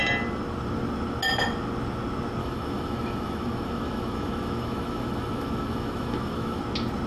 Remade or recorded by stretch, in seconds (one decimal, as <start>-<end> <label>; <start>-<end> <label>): 0.0-2.4 recorded; 2.4-6.6 remade; 6.6-7.1 recorded